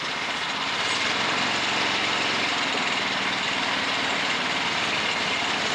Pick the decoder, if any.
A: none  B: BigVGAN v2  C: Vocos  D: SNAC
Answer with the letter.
A